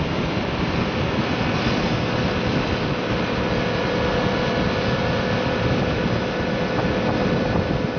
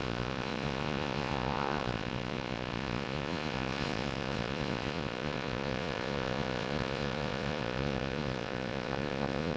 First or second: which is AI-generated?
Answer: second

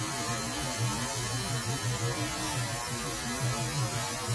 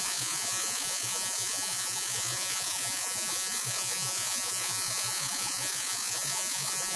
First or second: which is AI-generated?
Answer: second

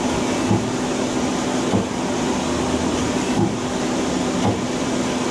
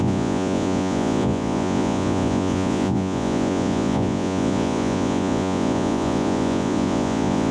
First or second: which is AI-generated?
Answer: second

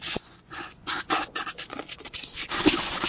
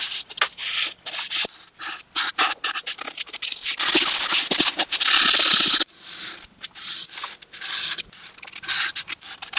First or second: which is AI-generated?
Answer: first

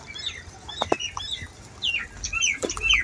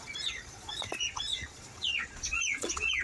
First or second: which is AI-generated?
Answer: second